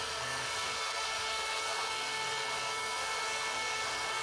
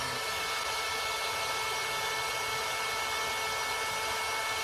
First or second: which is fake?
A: first